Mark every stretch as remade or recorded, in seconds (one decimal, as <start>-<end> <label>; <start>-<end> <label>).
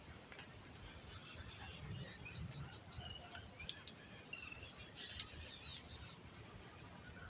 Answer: 0.0-7.3 recorded